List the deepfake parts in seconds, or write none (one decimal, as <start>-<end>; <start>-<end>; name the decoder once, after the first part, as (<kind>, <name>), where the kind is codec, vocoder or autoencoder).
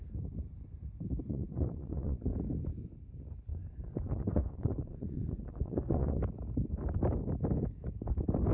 1.2-2.3 (vocoder, Vocos); 3.5-6.2